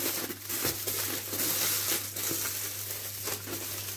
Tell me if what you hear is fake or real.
real